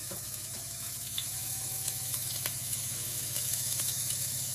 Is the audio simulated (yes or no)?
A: yes